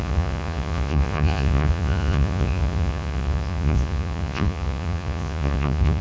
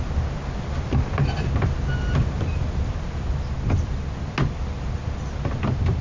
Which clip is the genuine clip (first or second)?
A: second